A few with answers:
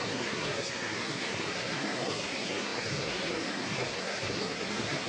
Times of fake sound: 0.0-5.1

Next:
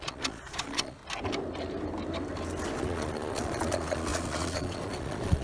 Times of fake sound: 0.0-1.0; 2.8-5.4

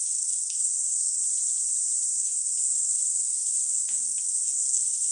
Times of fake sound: 0.0-1.2; 2.2-5.1

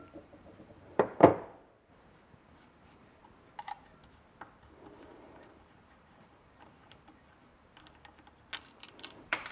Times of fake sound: 0.0-1.3; 1.9-3.2; 5.2-7.5; 8.6-9.5

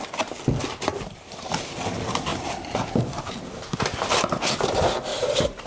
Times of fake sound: 0.9-1.5; 2.3-3.4; 5.1-5.7